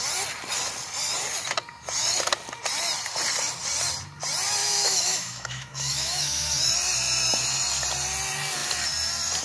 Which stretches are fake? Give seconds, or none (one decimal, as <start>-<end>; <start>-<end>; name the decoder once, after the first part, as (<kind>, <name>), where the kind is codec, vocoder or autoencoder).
4.6-6.7 (autoencoder, DAC-VAE)